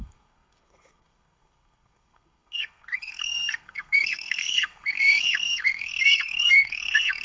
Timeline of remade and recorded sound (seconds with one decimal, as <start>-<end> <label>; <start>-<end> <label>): 0.0-7.2 remade